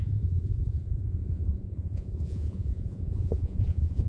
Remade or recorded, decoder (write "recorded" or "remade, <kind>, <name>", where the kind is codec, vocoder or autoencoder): remade, vocoder, Vocos